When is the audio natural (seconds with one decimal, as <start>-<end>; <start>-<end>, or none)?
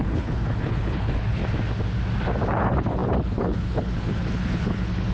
1.4-2.5